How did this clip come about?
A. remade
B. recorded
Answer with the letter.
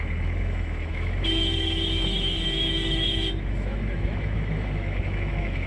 A